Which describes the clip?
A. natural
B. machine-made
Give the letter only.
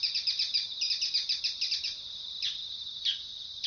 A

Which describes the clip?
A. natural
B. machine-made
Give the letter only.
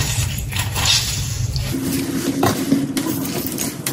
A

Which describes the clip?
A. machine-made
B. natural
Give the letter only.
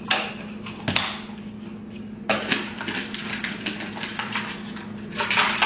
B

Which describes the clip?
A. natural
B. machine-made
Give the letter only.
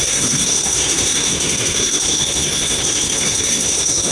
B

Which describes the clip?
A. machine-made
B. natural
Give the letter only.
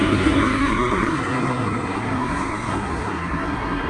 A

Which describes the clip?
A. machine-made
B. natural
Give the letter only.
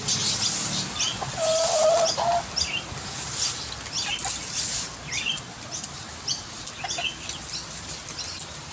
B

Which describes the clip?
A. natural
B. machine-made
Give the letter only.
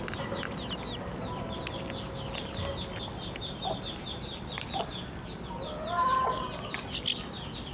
A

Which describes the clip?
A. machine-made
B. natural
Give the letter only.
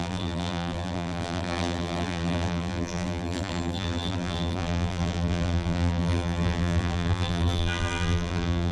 A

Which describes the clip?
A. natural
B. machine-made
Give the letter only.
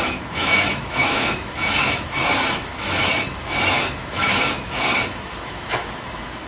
B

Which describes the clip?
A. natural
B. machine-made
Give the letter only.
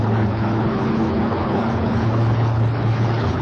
B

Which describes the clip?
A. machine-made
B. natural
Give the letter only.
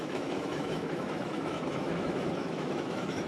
A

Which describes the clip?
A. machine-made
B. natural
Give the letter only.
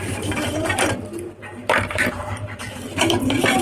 A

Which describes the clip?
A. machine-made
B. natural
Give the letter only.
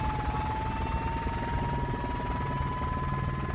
B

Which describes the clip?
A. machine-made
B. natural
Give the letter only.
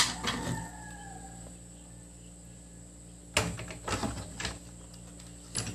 B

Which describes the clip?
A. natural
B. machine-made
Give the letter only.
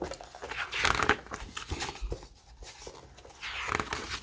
A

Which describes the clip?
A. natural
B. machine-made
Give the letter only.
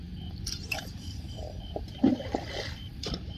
B